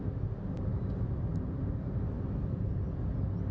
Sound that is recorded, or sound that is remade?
recorded